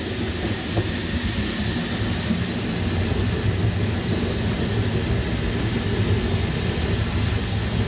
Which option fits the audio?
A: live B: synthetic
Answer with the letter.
A